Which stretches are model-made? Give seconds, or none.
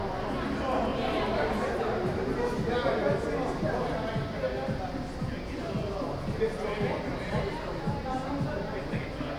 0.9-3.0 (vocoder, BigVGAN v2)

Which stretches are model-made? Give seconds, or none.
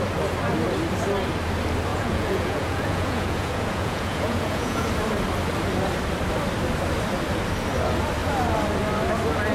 1.9-4.9 (vocoder, Vocos)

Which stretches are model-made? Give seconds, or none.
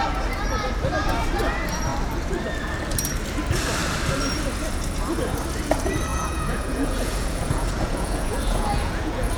6.1-9.4 (vocoder, Vocos)